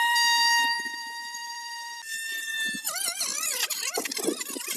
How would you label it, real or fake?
fake